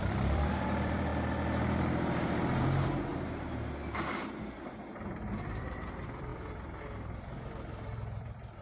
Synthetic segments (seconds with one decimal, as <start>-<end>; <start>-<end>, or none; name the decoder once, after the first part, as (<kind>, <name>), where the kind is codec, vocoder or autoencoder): 0.0-1.1 (vocoder, BigVGAN v2); 2.6-3.1; 4.4-8.6